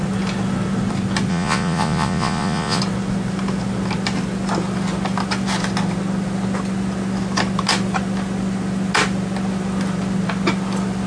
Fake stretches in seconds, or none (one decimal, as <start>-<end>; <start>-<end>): 1.3-2.8